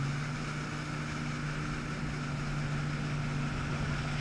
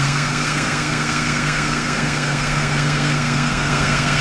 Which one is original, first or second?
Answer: first